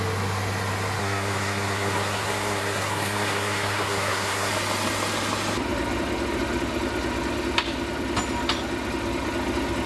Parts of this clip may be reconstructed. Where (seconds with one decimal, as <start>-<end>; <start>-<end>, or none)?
1.0-4.5